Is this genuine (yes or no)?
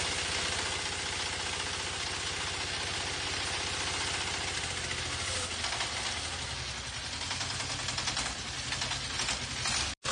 yes